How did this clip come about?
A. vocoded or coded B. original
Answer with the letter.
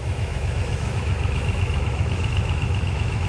A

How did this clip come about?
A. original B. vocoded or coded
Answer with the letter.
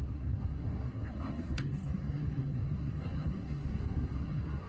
B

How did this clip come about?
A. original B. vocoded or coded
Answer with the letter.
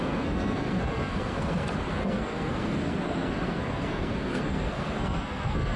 B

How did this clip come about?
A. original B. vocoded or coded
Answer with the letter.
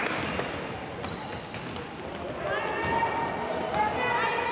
A